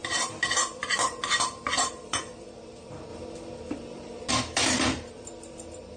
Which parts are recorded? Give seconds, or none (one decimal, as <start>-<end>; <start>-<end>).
3.1-4.3